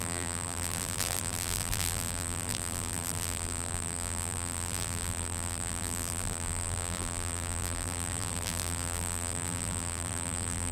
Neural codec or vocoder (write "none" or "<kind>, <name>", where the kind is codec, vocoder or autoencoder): vocoder, BigVGAN v2